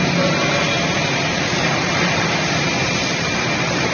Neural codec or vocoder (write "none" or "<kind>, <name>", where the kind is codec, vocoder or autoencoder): vocoder, BigVGAN v2